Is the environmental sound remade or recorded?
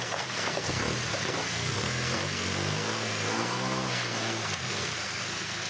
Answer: remade